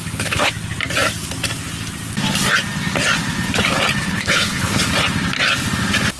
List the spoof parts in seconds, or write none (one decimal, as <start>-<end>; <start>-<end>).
0.0-0.5; 4.0-4.9